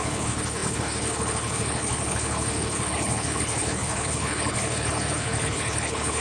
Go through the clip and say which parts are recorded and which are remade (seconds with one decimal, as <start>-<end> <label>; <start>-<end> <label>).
0.0-6.2 remade

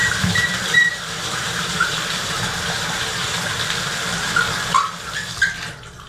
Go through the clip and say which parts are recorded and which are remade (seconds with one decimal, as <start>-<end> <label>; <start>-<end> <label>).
0.0-3.5 remade; 3.5-6.1 recorded